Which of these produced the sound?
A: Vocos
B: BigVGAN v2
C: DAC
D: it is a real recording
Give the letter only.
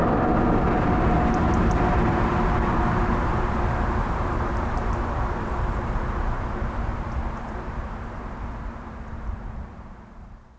B